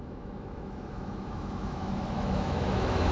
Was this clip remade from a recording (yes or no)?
yes